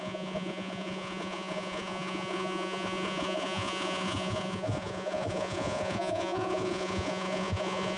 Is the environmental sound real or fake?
fake